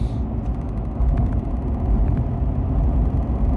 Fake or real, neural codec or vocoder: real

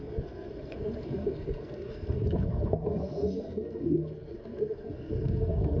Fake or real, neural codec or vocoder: fake, codec, SNAC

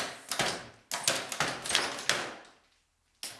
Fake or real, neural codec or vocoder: real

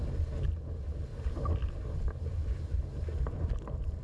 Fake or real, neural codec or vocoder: real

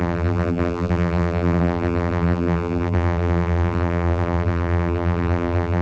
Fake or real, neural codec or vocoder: fake, vocoder, BigVGAN v2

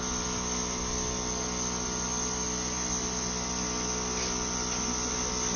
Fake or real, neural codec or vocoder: real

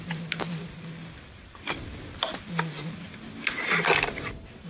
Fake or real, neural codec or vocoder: real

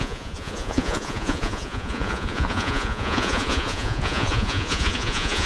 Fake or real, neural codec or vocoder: fake, vocoder, Vocos